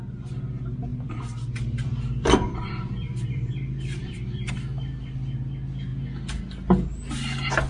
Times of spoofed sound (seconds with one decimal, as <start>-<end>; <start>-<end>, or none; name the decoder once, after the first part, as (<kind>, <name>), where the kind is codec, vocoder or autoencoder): 0.9-4.5 (vocoder, BigVGAN v2)